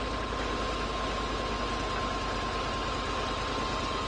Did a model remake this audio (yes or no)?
no